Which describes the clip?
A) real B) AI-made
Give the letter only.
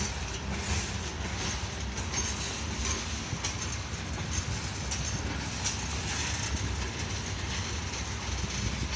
A